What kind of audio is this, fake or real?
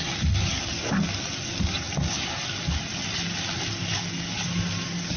real